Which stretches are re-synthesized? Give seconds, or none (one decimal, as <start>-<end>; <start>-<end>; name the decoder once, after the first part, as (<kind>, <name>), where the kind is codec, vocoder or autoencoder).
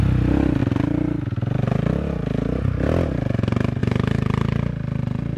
none